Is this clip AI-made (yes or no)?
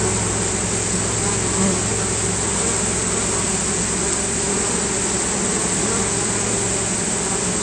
no